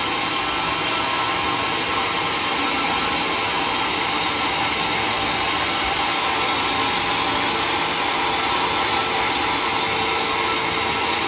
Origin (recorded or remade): recorded